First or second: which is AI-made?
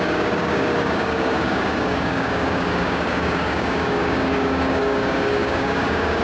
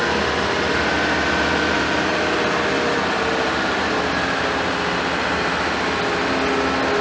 first